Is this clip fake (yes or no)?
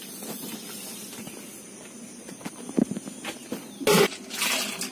no